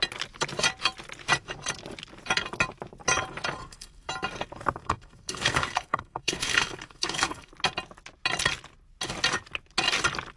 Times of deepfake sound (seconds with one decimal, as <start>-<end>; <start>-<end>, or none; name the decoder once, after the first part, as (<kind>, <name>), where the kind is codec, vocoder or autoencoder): 3.6-4.1 (codec, SNAC); 4.8-7.5